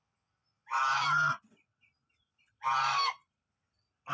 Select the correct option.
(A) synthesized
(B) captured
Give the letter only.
A